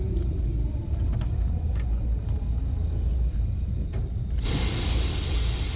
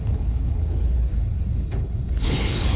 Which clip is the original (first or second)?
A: first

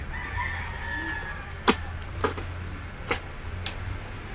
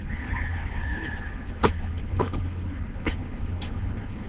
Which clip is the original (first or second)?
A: first